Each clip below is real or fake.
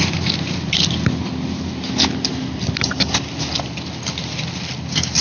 real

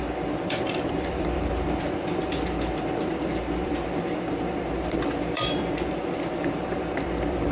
fake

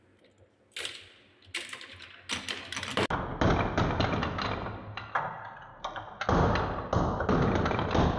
real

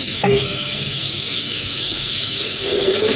fake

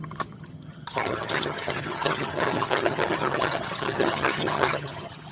fake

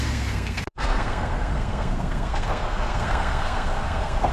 fake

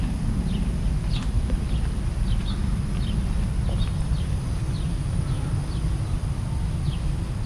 real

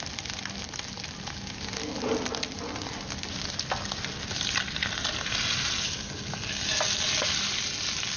real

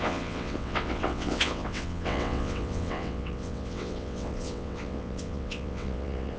fake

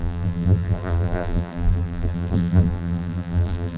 fake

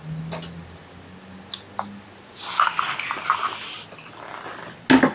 real